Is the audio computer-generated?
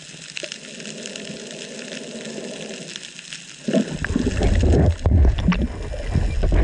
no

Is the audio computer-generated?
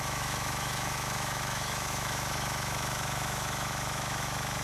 yes